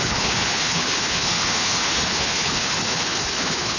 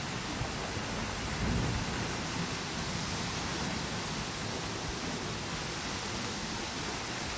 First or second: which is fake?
first